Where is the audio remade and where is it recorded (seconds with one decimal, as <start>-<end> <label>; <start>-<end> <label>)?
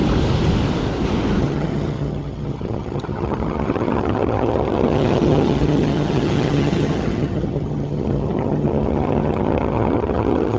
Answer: 0.0-1.4 recorded; 1.4-10.6 remade